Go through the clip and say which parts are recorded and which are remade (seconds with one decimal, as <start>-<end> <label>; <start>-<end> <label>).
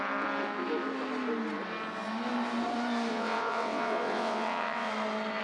0.0-3.1 recorded; 3.1-4.9 remade; 4.9-5.4 recorded